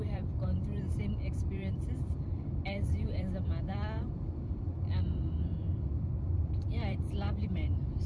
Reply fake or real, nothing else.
fake